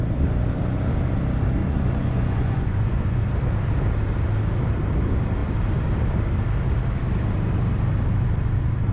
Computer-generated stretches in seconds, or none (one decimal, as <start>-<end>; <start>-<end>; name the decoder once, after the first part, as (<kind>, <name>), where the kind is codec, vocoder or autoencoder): 1.6-3.2 (vocoder, Vocos)